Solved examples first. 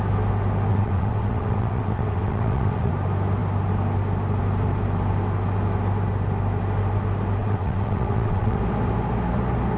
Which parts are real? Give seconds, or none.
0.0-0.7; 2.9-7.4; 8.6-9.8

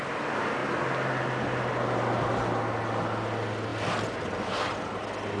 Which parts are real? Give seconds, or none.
0.0-5.4